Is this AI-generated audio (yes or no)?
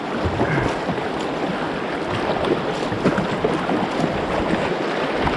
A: no